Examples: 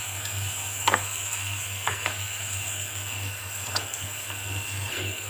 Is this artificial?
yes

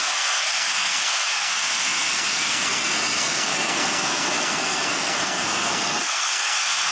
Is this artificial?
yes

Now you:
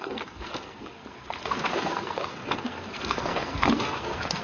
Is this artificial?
yes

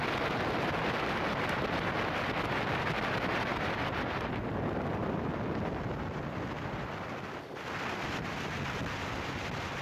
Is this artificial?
no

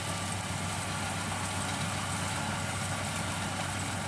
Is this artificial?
no